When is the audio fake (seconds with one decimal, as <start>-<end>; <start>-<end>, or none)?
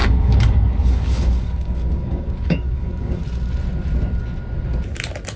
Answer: 0.0-3.2